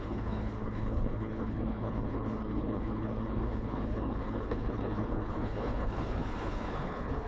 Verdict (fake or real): fake